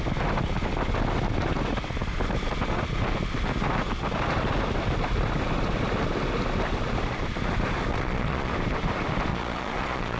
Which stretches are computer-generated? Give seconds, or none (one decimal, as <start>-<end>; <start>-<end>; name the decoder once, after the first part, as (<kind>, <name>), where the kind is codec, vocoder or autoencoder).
7.9-8.5 (vocoder, Vocos); 9.3-10.2